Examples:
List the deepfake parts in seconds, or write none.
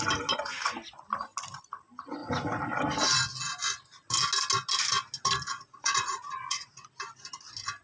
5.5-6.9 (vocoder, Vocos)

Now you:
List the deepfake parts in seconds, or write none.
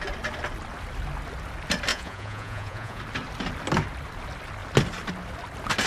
1.9-3.0 (vocoder, Vocos)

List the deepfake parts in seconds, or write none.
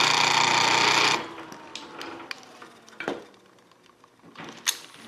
none